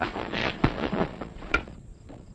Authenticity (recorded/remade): remade